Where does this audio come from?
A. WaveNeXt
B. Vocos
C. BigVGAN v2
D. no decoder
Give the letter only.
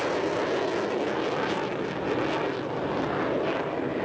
D